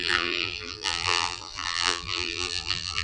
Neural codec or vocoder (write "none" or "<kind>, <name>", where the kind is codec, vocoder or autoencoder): vocoder, BigVGAN v2